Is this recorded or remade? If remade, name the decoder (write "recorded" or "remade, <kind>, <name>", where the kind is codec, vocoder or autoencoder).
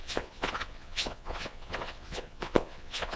remade, vocoder, Vocos